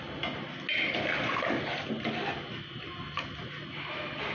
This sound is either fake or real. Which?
real